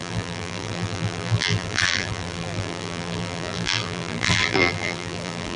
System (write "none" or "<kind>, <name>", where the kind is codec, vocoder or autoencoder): vocoder, BigVGAN v2